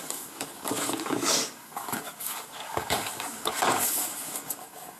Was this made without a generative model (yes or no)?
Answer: no